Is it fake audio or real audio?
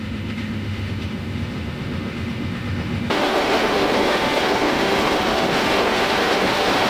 fake